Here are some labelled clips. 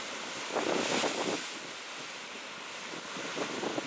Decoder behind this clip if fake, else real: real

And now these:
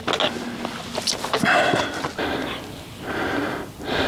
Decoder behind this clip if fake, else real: real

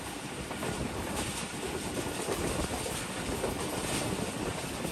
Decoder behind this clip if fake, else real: real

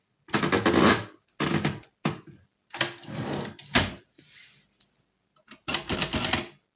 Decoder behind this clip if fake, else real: real